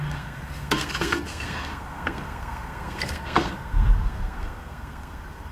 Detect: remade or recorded remade